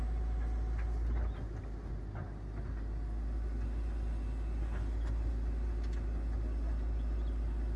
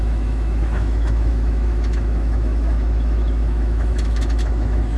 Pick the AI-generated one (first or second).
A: second